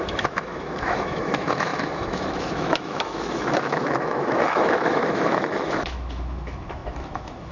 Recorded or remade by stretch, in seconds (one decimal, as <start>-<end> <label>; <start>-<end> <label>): 0.0-7.5 remade